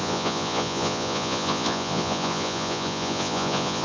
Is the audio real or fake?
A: fake